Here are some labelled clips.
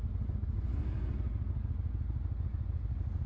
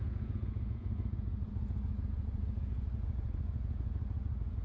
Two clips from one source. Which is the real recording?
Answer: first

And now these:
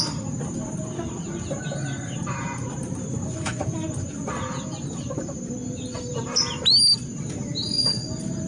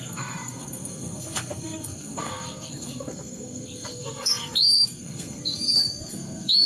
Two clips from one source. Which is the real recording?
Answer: first